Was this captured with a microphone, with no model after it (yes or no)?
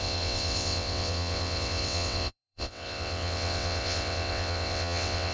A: no